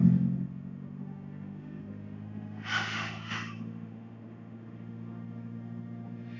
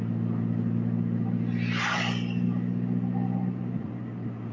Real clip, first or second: second